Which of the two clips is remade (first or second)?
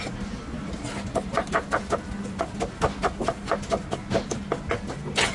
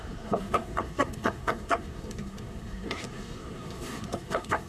second